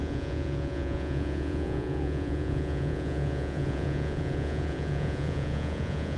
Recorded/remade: remade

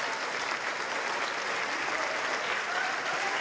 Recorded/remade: recorded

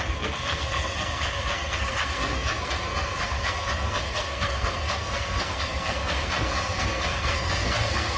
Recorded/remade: remade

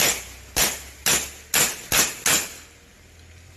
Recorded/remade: recorded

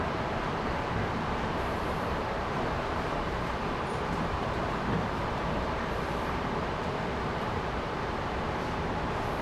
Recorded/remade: remade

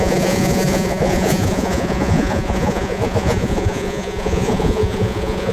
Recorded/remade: remade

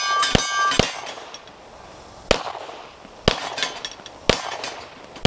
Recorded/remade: recorded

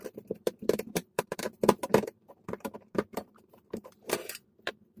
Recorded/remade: remade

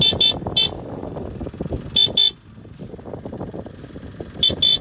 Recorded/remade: recorded